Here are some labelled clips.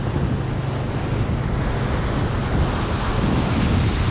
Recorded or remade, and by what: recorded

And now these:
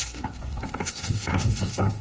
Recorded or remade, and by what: remade, codec, SNAC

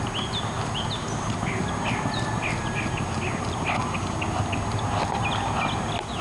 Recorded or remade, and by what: recorded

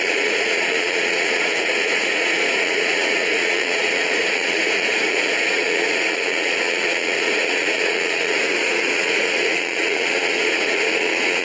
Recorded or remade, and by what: remade, vocoder, Vocos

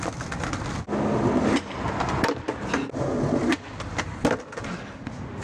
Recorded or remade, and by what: recorded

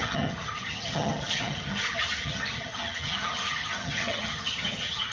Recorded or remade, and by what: remade, vocoder, HiFi-GAN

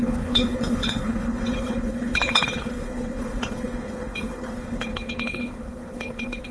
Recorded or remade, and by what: remade, codec, HILCodec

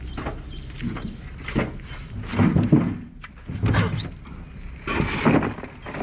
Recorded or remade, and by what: recorded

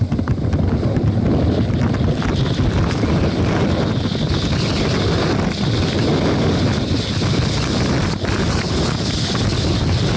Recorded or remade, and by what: recorded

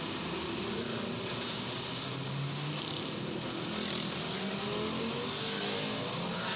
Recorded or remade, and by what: recorded